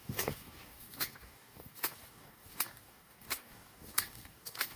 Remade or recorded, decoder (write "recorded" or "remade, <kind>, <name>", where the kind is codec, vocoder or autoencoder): remade, codec, DAC